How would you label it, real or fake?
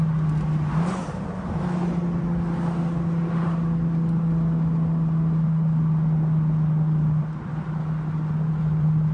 real